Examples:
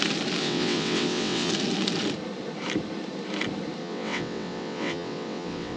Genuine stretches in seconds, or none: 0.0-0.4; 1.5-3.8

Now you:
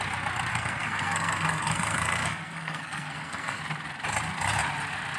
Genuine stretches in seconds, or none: 0.0-0.5; 3.6-5.2

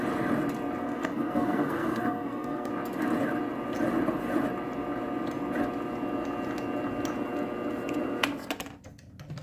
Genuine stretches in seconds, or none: 0.0-0.8; 2.7-9.4

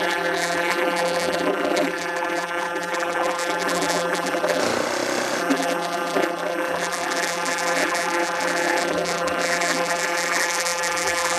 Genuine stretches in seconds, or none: 4.6-5.4